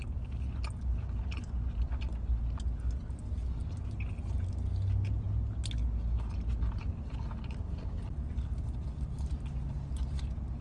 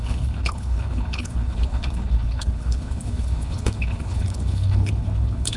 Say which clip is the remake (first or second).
second